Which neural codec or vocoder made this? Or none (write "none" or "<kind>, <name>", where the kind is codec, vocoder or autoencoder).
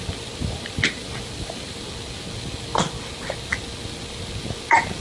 none